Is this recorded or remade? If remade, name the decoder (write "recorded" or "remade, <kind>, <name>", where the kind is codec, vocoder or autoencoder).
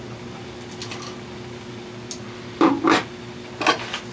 recorded